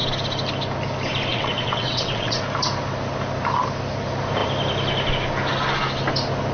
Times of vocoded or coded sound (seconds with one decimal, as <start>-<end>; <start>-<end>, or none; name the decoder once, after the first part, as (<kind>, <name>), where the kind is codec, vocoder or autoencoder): 1.3-2.4 (vocoder, WaveNeXt)